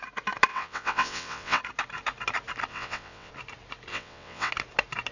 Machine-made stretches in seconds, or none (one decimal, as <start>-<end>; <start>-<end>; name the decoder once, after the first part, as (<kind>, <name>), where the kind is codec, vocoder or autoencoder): 0.5-1.6 (vocoder, WaveNeXt); 2.7-3.3; 3.9-4.5